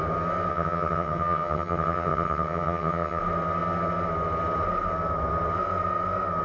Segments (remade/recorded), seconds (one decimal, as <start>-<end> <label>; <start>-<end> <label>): 0.0-0.5 recorded; 0.5-3.2 remade; 3.2-6.4 recorded